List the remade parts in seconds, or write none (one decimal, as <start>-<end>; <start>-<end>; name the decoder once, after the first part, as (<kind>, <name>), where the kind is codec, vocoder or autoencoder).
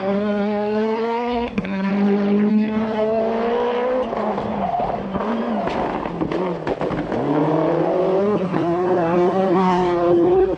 0.0-1.9 (codec, SNAC); 2.5-3.2; 8.2-10.6